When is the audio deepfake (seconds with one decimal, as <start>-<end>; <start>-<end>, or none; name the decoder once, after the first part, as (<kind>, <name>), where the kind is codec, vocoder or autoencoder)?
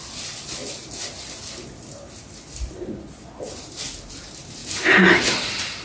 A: none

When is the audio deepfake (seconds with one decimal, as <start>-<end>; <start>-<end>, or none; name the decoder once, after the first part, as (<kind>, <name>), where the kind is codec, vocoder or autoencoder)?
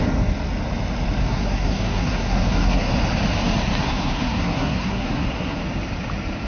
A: 1.2-2.9 (codec, SNAC); 3.8-5.6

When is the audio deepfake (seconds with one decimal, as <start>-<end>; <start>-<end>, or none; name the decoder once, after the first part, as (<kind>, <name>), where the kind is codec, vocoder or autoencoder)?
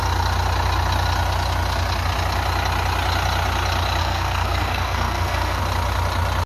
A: 4.0-5.6 (codec, SNAC)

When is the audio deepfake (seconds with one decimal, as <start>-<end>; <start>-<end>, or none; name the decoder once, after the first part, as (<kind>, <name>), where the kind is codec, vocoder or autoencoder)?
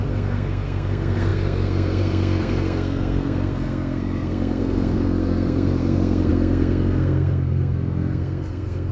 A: 0.0-8.9 (codec, SNAC)